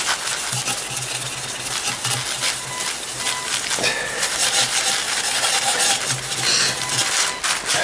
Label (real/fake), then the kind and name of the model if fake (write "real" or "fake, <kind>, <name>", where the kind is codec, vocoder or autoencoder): real